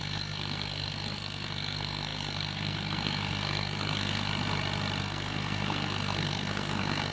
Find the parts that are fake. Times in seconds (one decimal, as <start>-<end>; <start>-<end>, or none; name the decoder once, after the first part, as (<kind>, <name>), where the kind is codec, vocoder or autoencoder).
0.0-4.3 (codec, SNAC); 5.0-7.1